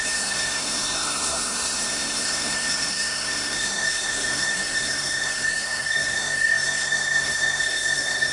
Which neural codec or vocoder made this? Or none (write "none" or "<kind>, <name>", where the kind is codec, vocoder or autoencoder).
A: codec, SNAC